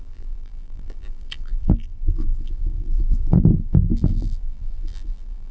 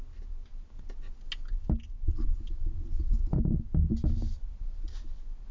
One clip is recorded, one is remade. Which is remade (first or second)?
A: first